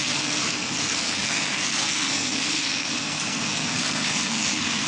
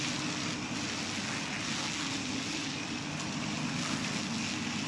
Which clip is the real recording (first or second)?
second